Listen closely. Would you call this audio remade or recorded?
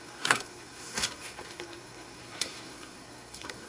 remade